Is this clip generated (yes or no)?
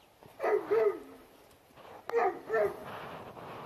no